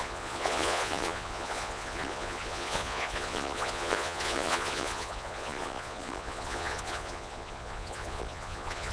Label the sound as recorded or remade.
remade